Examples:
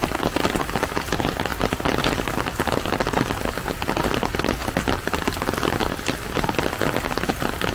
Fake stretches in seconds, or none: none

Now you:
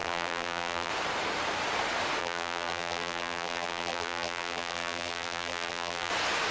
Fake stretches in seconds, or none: 0.0-0.9 (vocoder, BigVGAN v2); 2.2-6.1

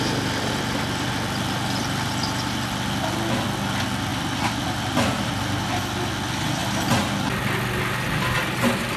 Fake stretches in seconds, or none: 4.1-5.8 (vocoder, BigVGAN v2)

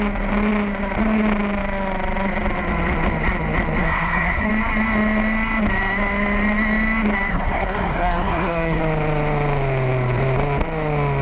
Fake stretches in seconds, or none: 3.8-4.5 (codec, SNAC); 7.3-8.8